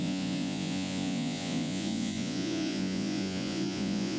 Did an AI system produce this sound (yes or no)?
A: yes